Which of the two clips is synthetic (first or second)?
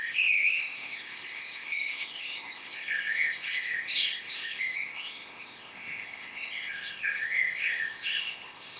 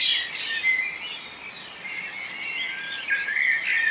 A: first